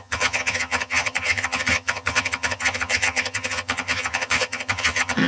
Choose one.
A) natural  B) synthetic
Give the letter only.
B